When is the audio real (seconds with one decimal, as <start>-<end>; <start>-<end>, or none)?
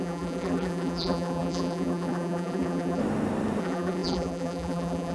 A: 3.0-3.6